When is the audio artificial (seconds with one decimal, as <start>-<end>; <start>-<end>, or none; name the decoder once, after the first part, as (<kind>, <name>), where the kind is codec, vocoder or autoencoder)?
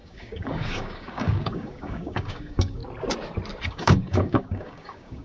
0.0-2.8 (codec, DAC); 3.7-5.2